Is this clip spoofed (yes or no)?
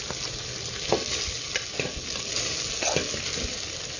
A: no